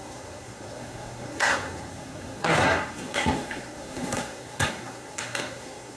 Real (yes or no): no